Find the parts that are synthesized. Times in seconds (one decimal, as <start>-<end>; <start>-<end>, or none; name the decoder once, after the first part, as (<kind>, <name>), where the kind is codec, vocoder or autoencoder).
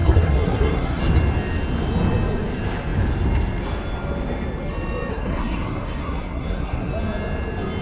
0.0-1.0 (codec, SNAC); 5.1-6.9